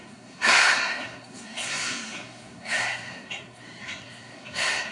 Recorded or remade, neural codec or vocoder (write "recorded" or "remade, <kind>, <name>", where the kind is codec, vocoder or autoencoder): remade, codec, SNAC